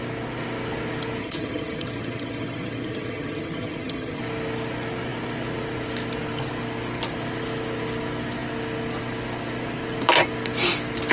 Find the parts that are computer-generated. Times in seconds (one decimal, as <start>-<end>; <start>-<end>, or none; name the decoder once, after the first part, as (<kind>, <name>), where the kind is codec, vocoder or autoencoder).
1.2-4.2 (vocoder, HiFi-GAN)